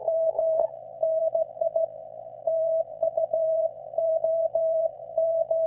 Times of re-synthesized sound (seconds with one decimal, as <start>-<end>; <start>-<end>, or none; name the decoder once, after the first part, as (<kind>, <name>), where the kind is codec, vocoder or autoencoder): 0.0-5.7 (vocoder, BigVGAN v2)